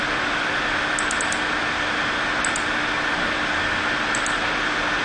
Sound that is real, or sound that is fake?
real